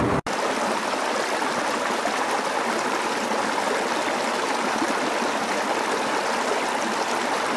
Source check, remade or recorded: recorded